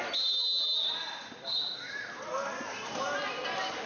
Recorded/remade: recorded